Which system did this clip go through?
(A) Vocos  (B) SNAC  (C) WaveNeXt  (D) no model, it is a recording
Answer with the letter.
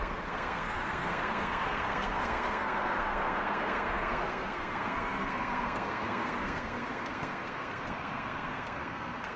B